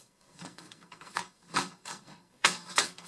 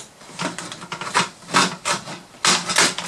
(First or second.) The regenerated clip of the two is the first